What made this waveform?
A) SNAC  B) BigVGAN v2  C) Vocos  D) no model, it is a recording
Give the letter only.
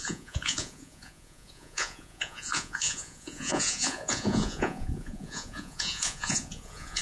C